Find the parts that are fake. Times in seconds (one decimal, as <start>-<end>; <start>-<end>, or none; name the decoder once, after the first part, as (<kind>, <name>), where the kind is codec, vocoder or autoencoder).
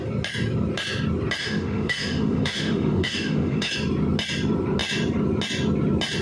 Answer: 1.4-3.7 (autoencoder, DAC-VAE)